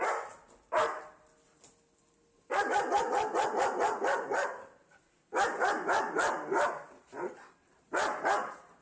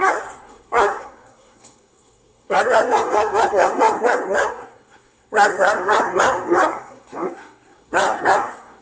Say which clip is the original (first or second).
first